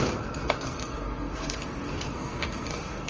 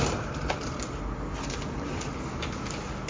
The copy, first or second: first